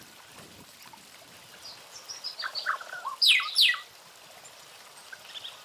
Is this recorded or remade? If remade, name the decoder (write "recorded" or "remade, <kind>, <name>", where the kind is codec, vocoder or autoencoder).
remade, vocoder, BigVGAN v2